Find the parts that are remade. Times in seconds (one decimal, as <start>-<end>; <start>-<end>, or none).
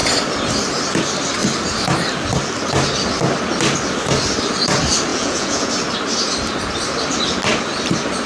5.1-5.7